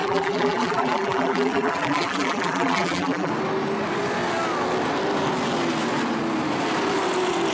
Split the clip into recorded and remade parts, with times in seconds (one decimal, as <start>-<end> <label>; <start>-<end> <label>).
0.0-3.3 remade; 3.3-7.5 recorded